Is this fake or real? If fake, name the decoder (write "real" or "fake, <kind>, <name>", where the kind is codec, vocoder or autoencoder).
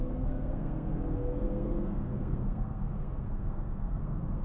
fake, codec, SNAC